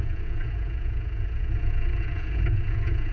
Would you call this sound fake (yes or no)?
yes